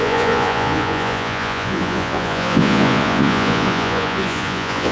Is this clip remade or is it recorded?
remade